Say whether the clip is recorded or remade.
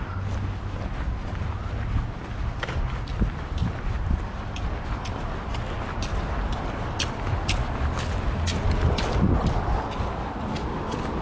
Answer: recorded